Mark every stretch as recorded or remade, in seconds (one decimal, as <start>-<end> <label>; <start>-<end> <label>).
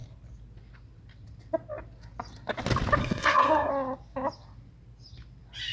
0.0-3.0 recorded; 3.0-3.7 remade; 3.7-5.7 recorded